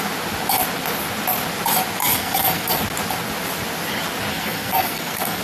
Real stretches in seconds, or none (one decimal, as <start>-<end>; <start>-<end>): 0.0-2.0; 2.8-4.3